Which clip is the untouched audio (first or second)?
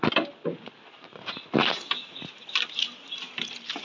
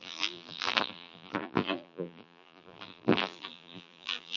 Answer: first